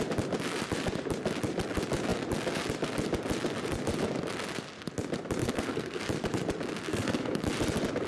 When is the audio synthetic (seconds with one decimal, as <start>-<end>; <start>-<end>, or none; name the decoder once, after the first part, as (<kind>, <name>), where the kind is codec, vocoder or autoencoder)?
5.4-6.0 (codec, SNAC); 6.9-7.4